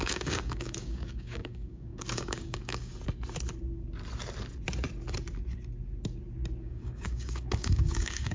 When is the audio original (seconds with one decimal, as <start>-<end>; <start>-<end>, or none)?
2.9-6.6